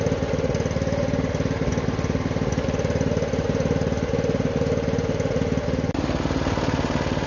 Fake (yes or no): no